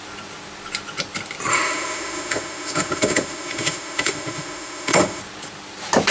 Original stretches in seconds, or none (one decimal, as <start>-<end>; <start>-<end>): 0.0-1.5; 5.2-6.1